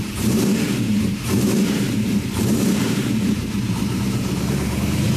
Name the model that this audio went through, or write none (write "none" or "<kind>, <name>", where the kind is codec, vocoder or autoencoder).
vocoder, BigVGAN v2